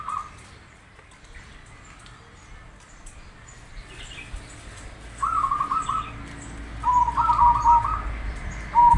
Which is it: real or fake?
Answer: real